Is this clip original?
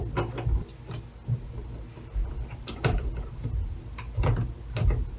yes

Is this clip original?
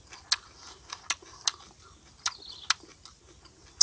yes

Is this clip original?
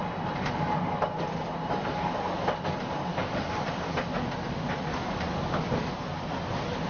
yes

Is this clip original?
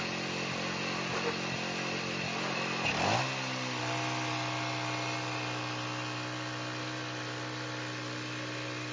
yes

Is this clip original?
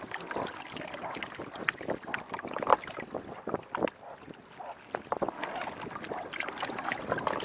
yes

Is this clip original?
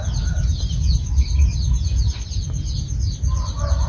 yes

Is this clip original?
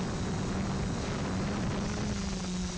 yes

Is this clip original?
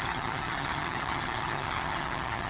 no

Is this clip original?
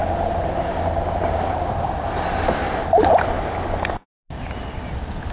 yes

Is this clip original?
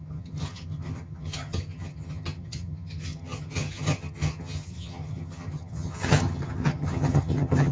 no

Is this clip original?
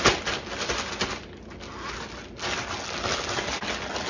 yes